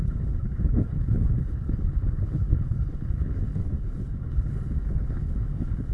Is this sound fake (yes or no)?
yes